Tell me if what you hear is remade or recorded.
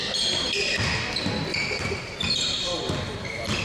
recorded